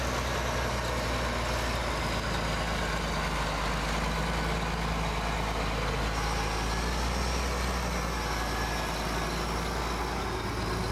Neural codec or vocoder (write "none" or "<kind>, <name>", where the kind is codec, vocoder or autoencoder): none